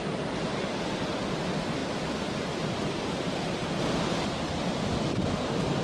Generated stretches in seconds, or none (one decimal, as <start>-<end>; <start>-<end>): none